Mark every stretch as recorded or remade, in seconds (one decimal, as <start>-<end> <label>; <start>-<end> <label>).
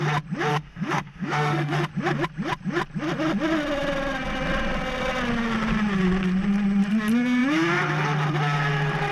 0.0-0.5 recorded; 0.5-1.9 remade; 1.9-9.1 recorded